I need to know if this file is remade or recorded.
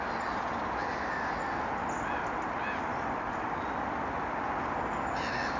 recorded